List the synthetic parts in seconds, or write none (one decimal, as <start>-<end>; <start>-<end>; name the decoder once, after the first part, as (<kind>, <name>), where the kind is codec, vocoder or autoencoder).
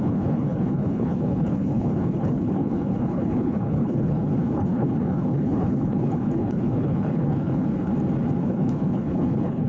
0.0-7.9 (codec, HILCodec); 8.4-9.7